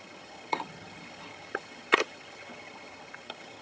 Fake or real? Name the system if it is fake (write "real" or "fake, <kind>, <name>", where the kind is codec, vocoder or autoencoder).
fake, vocoder, HiFi-GAN